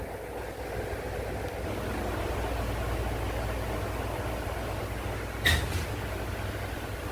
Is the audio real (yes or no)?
yes